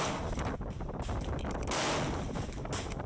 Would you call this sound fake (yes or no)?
no